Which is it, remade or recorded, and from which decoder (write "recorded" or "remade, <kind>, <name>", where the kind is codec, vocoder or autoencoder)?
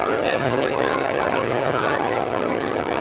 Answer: remade, vocoder, HiFi-GAN